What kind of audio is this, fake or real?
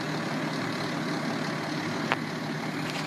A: real